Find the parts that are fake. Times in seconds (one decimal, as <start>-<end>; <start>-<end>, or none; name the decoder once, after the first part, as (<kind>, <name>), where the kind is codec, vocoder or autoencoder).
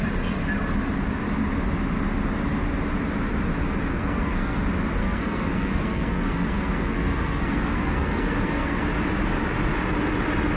3.9-4.6 (codec, SNAC); 5.0-8.9